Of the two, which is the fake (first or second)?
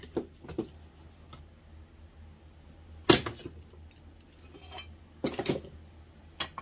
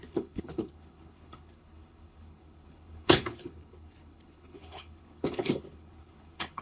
second